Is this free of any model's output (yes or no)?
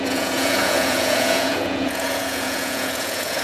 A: no